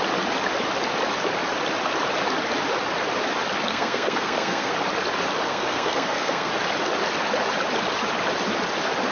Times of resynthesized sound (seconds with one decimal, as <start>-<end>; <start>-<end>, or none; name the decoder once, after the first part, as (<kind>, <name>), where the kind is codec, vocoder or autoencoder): 3.7-4.7 (codec, SNAC); 5.5-6.5

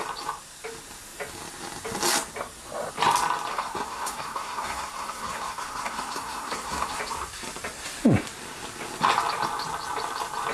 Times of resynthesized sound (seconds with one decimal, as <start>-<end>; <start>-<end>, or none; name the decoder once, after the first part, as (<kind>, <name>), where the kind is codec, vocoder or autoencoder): 3.5-7.0 (codec, SNAC)

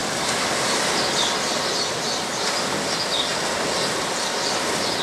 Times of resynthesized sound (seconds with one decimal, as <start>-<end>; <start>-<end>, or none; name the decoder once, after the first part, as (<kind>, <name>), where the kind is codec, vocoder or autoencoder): none

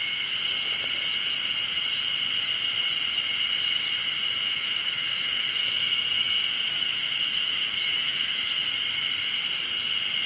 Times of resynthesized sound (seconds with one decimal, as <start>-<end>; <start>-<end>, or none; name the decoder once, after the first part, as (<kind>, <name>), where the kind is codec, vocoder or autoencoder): 4.2-8.6 (autoencoder, DAC-VAE)

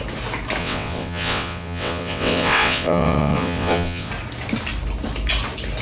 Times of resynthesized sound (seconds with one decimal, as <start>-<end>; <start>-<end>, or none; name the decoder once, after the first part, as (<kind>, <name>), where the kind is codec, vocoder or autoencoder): 0.6-4.1 (vocoder, WaveNeXt)

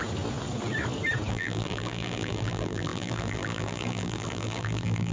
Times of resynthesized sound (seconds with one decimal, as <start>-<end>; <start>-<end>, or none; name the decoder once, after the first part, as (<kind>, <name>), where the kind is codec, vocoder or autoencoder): 1.3-5.1 (vocoder, BigVGAN v2)

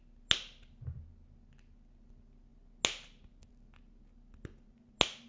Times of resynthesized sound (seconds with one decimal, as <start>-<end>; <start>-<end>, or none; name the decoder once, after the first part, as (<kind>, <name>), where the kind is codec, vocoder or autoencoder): none

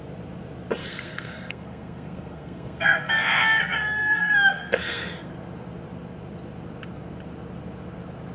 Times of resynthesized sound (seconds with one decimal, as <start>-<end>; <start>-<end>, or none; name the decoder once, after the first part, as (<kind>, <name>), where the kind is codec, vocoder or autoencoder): 0.8-5.3 (codec, SNAC)